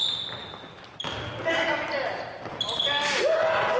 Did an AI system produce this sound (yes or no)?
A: no